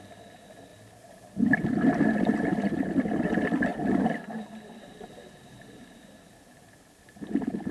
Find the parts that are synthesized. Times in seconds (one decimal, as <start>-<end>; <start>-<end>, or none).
none